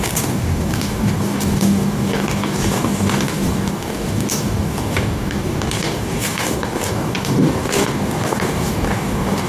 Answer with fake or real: fake